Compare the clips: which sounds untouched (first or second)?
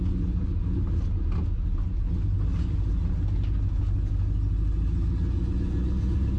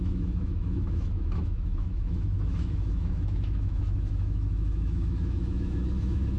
first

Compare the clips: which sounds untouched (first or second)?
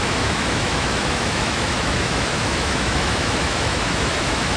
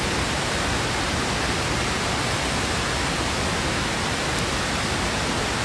second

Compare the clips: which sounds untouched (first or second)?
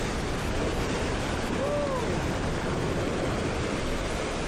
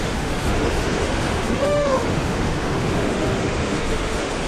first